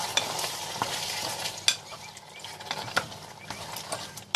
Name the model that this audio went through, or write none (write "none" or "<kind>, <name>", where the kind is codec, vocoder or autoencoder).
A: none